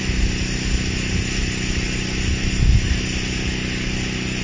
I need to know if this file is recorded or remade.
recorded